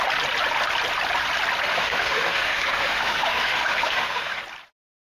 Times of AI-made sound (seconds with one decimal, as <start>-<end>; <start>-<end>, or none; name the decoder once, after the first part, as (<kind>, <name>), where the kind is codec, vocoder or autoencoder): 1.7-4.4 (autoencoder, DAC-VAE)